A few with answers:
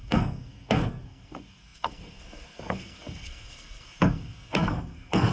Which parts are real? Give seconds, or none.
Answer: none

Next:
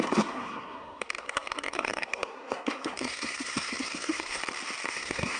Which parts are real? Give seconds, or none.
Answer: 4.4-4.9

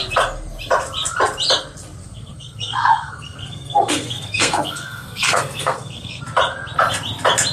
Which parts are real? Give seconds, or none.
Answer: 0.0-2.0; 6.2-7.5